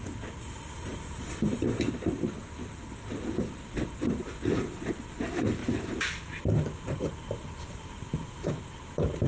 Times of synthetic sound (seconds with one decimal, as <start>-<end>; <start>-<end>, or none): 5.6-9.3

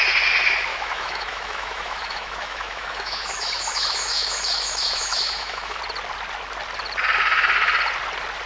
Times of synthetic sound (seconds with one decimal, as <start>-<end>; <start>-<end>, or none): 0.7-5.8

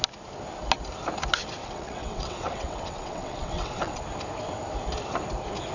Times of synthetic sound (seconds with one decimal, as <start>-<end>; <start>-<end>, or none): 1.6-4.0

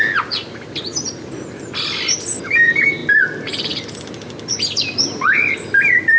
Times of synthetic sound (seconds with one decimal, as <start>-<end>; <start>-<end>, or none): none

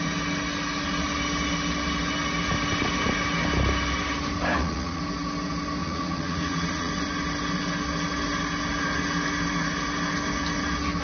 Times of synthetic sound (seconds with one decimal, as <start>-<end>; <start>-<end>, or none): 4.5-5.0; 5.8-6.9